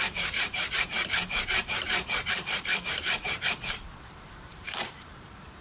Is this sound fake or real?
fake